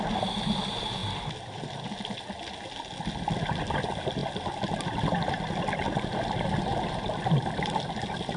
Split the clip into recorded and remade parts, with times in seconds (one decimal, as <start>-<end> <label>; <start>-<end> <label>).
0.0-8.4 recorded